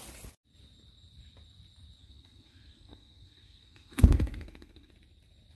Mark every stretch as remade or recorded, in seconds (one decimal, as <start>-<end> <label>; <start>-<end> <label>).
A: 0.0-2.0 recorded; 2.0-4.9 remade; 4.9-5.6 recorded